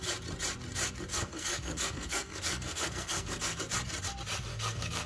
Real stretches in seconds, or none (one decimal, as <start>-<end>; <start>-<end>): 0.0-1.1; 3.6-4.5